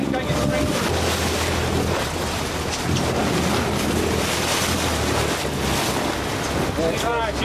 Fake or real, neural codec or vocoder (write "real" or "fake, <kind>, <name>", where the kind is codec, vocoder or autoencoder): real